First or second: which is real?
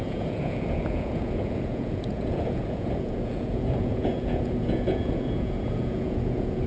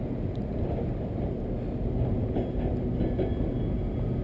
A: second